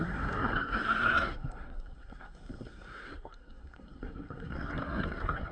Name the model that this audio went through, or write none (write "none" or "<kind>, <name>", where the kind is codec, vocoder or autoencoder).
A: codec, SNAC